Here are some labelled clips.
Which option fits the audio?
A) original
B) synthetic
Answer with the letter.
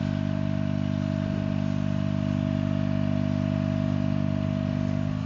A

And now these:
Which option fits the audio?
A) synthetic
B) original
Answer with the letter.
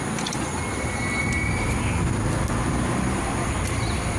B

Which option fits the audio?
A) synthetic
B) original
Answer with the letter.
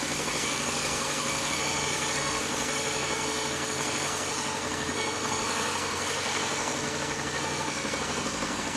A